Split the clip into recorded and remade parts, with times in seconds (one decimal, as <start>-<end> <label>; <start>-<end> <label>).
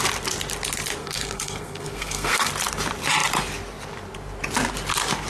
0.0-1.0 recorded; 1.0-2.5 remade; 2.5-5.3 recorded